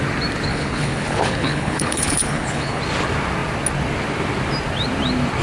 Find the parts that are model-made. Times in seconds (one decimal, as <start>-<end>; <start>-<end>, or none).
0.5-2.8